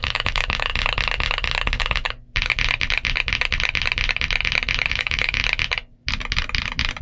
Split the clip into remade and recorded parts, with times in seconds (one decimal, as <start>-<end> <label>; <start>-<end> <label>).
0.0-0.7 remade; 0.7-4.9 recorded; 4.9-5.4 remade; 5.4-7.0 recorded